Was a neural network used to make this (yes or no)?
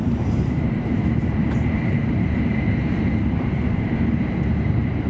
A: yes